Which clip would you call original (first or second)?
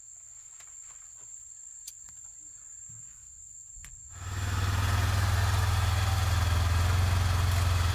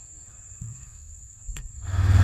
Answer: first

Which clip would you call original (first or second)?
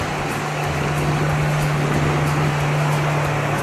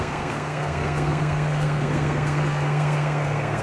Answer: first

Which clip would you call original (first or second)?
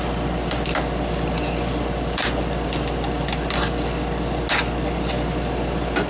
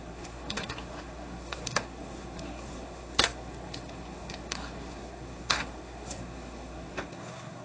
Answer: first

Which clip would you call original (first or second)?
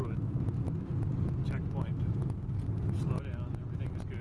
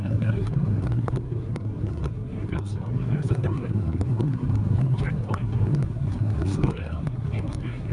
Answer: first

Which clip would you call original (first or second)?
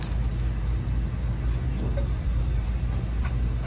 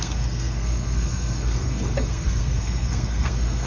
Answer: first